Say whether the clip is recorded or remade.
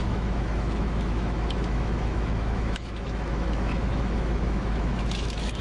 remade